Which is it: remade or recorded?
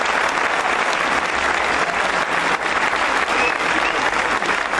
recorded